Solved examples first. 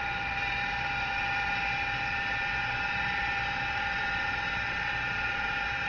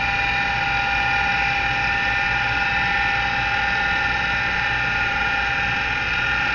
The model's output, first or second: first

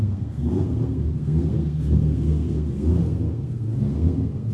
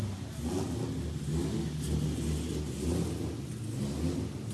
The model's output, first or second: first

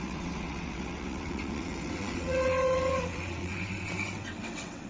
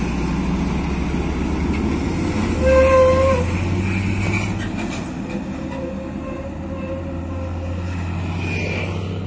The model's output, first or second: first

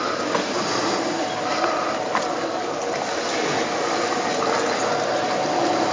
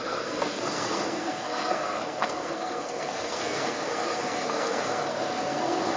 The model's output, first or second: second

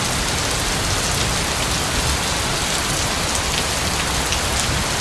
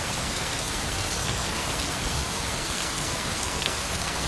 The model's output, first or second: second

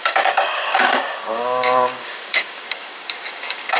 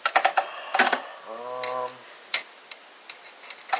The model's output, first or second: first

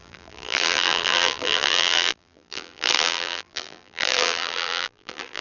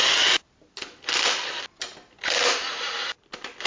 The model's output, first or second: first